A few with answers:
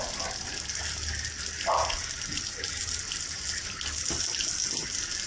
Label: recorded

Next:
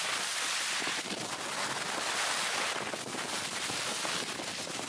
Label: remade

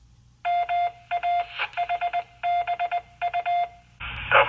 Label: recorded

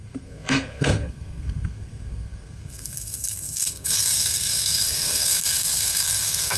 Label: remade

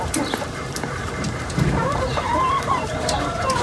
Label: remade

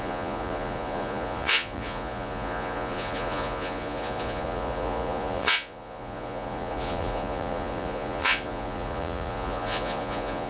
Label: remade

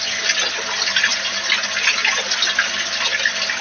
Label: recorded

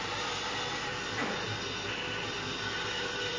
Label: recorded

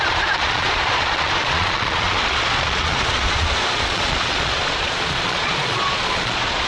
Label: remade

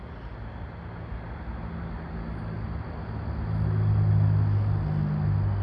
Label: recorded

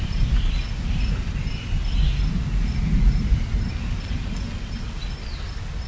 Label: recorded